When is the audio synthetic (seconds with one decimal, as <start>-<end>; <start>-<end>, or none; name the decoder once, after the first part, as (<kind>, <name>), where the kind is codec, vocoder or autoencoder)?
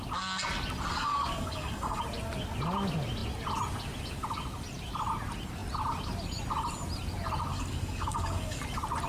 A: 0.9-2.0 (codec, DAC); 7.5-8.6